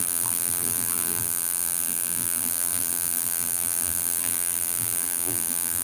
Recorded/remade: remade